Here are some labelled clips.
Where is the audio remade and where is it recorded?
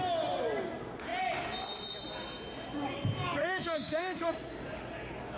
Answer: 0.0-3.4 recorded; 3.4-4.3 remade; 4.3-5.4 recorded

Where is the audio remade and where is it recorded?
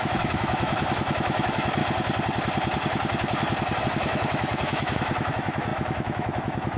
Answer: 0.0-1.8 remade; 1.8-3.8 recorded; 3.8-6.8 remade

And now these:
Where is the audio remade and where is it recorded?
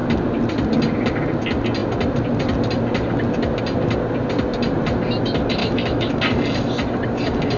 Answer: 0.0-5.6 recorded; 5.6-6.2 remade; 6.2-7.6 recorded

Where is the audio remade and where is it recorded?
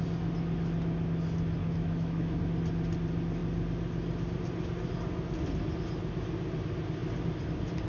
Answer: 0.0-1.6 recorded; 1.6-2.4 remade; 2.4-7.9 recorded